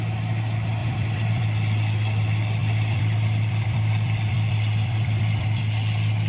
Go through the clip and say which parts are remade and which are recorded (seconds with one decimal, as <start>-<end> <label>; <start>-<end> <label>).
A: 0.0-0.8 recorded; 0.8-1.4 remade; 1.4-2.6 recorded; 2.6-5.6 remade; 5.6-6.3 recorded